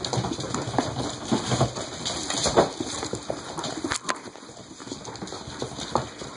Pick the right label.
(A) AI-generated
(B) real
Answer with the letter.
B